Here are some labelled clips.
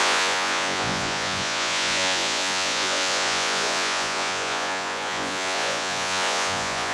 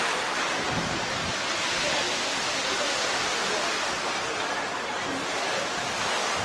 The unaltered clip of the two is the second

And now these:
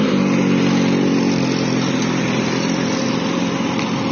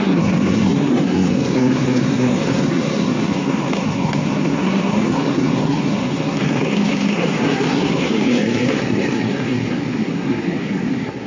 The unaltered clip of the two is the first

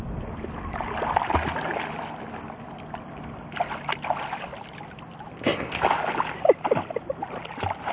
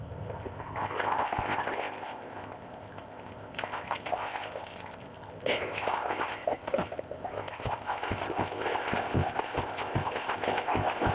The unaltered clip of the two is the first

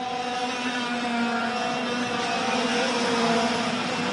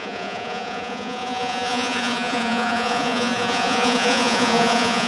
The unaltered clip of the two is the first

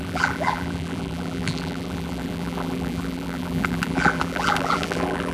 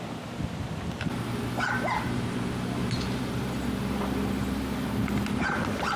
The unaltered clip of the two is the second